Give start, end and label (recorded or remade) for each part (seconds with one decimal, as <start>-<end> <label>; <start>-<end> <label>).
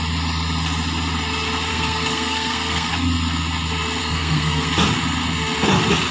0.0-1.7 recorded; 1.7-2.9 remade; 2.9-4.0 recorded; 4.0-4.7 remade; 4.7-6.1 recorded